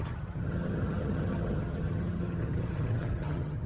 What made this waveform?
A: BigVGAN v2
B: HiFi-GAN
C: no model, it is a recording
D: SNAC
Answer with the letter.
B